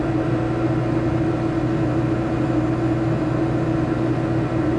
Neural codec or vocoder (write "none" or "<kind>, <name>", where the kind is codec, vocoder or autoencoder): none